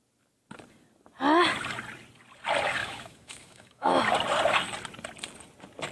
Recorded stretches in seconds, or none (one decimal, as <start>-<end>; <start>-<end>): 0.0-2.8; 4.0-5.9